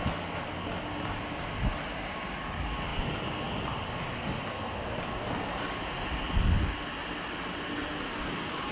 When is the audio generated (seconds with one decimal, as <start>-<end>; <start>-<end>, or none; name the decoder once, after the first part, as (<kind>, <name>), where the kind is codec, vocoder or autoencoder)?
none